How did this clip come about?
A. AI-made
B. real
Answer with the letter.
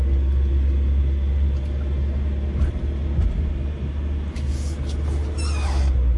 B